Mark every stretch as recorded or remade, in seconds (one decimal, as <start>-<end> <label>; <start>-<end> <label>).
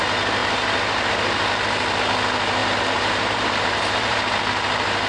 0.0-0.4 recorded; 0.4-1.1 remade; 1.1-2.6 recorded; 2.6-4.2 remade; 4.2-5.1 recorded